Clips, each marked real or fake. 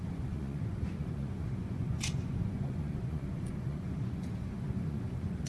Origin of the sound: fake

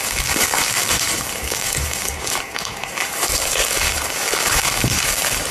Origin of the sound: fake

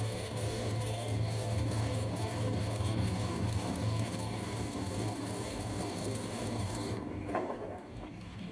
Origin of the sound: fake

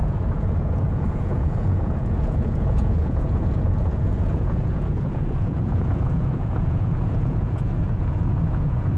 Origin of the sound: fake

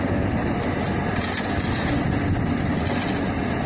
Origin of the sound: real